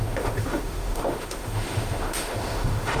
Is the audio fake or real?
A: fake